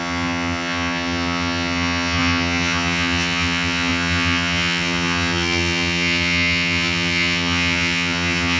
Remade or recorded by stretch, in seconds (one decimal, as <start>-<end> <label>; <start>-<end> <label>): 0.0-8.6 remade